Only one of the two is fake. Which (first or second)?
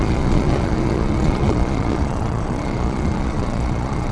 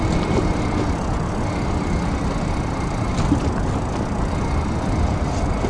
first